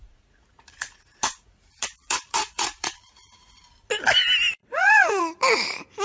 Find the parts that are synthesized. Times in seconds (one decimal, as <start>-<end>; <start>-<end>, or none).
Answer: 0.0-3.6; 4.6-5.2